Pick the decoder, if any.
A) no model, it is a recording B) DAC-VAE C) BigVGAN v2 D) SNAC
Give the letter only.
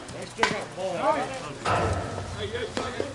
A